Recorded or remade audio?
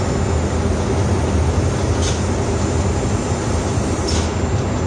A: recorded